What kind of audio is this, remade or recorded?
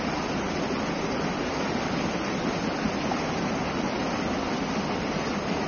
recorded